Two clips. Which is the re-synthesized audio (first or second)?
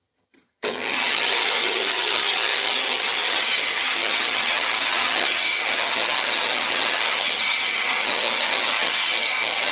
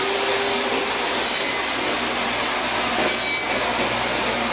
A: first